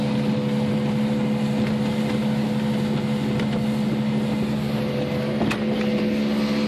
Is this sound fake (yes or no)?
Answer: no